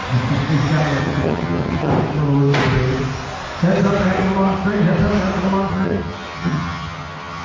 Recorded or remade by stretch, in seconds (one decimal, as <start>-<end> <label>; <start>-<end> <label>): 0.0-1.0 recorded; 1.0-1.9 remade; 1.9-5.7 recorded; 5.7-7.4 remade